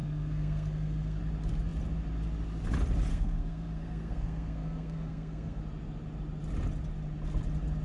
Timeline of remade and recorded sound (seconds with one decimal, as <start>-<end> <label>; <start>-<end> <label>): 0.0-1.2 remade; 1.2-3.1 recorded; 3.1-5.6 remade; 5.6-7.8 recorded